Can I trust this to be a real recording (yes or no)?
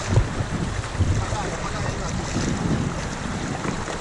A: yes